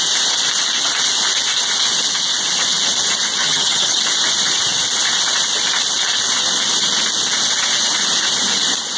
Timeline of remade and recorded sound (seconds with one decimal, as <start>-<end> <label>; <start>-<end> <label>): 0.0-3.4 recorded; 3.4-4.0 remade; 4.0-9.0 recorded